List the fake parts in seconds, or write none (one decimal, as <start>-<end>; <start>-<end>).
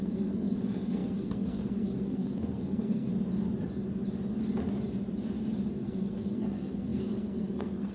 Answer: 0.0-3.1; 5.7-7.9